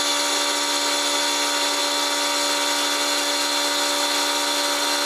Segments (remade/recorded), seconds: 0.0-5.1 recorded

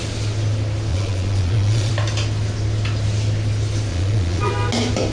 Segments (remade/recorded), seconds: 0.0-0.9 recorded; 0.9-1.9 remade; 1.9-3.9 recorded; 3.9-4.5 remade; 4.5-5.1 recorded

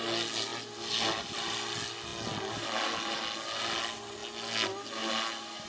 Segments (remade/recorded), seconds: 0.0-5.7 recorded

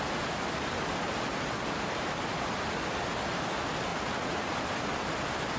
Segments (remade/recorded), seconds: 0.0-3.9 recorded; 3.9-4.5 remade; 4.5-5.6 recorded

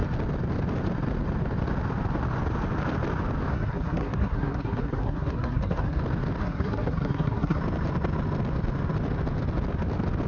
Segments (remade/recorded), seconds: 0.0-3.5 recorded; 3.5-6.0 remade; 6.0-6.4 recorded; 6.4-7.6 remade; 7.6-10.3 recorded

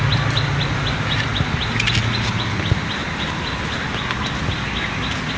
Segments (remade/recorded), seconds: 0.0-5.4 recorded

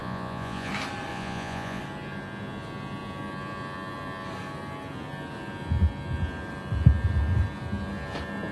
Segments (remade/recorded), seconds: 0.0-0.7 remade; 0.7-1.1 recorded; 1.1-1.8 remade; 1.8-8.5 recorded

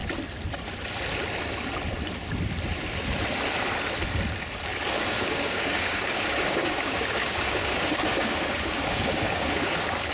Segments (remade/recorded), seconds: 0.0-4.9 recorded; 4.9-10.1 remade